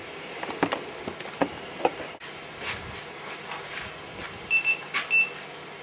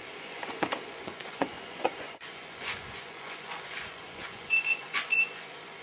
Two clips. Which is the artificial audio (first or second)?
second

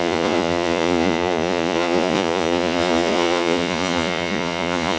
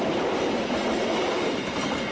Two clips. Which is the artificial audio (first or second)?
first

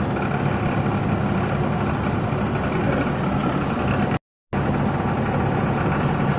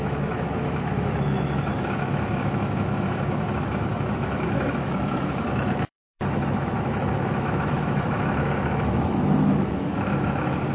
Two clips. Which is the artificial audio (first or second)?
second